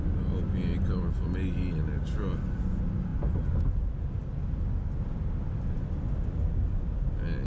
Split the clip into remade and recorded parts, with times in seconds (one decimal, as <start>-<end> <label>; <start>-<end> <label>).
0.0-7.5 recorded